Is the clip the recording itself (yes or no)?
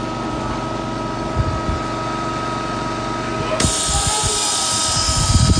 yes